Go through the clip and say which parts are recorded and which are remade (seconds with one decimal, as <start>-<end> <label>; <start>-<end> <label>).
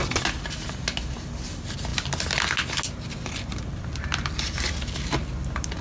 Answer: 0.0-5.8 recorded